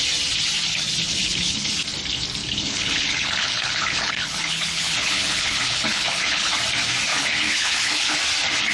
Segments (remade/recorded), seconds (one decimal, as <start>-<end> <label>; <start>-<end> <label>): 0.0-1.1 recorded; 1.1-1.7 remade; 1.7-2.4 recorded; 2.4-6.5 remade; 6.5-7.1 recorded; 7.1-8.2 remade; 8.2-8.7 recorded